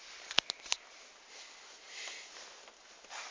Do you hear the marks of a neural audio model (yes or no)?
no